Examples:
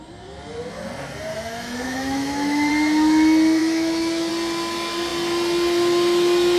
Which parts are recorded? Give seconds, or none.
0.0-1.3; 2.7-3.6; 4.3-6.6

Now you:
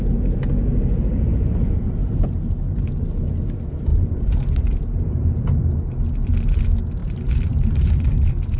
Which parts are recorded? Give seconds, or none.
0.0-2.0; 2.9-3.9; 5.6-7.0

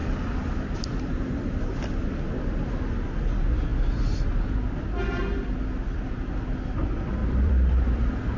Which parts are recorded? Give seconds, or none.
2.0-7.2

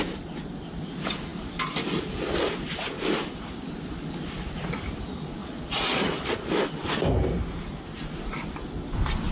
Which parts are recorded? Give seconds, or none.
0.0-5.4; 6.5-9.3

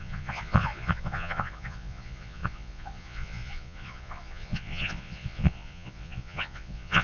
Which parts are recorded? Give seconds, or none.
none

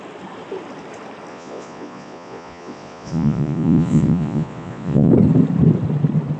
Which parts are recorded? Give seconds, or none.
0.0-1.3; 5.1-6.4

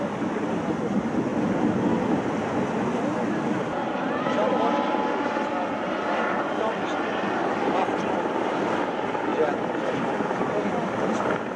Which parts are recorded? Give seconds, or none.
0.0-11.6

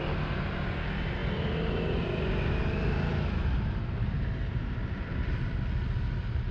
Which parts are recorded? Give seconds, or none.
0.0-6.5